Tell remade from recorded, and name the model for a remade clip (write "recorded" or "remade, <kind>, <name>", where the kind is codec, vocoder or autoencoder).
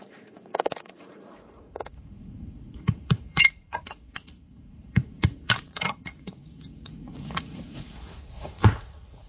remade, vocoder, Vocos